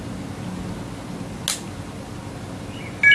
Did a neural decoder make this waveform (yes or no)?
no